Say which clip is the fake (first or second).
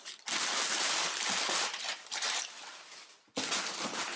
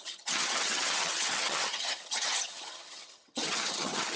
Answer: second